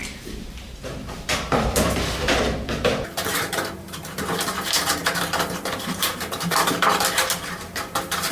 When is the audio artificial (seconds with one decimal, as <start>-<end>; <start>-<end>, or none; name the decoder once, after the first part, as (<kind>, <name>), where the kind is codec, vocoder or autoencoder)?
0.0-8.3 (vocoder, BigVGAN v2)